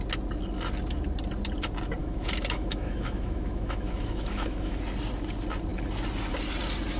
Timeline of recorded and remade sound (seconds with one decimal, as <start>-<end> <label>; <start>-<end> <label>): 0.0-2.0 recorded; 2.0-4.8 remade; 4.8-7.0 recorded